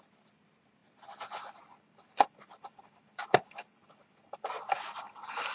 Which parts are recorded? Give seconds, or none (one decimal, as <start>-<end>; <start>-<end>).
0.0-5.5